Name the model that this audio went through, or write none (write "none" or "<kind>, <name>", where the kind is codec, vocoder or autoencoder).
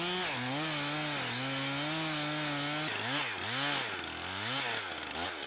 none